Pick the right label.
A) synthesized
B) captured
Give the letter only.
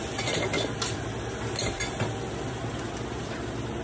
B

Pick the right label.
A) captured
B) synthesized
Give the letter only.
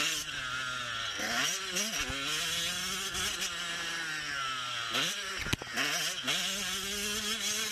A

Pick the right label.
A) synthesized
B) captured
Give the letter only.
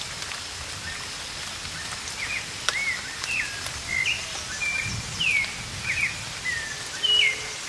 B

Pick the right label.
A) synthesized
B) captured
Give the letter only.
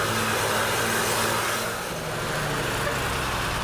B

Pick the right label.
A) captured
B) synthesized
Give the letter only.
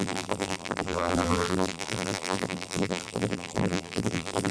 B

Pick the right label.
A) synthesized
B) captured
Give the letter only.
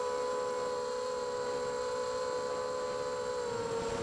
B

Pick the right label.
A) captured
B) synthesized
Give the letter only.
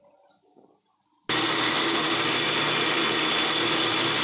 A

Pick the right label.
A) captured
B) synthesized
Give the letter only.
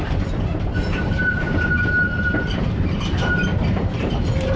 B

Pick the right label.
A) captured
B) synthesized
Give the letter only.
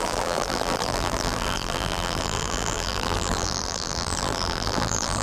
B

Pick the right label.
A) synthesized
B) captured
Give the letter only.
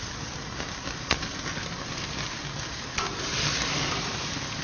A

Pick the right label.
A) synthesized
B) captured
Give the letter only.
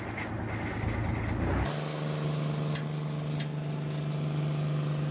B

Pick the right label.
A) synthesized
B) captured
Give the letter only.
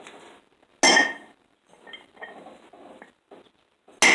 B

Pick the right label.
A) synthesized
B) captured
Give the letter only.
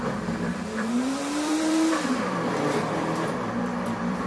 A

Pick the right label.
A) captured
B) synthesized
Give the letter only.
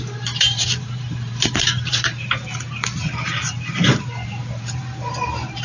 B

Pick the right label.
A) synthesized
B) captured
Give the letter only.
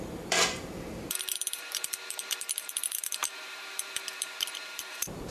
A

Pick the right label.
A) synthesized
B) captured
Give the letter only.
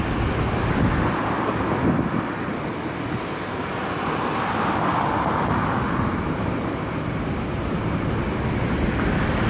B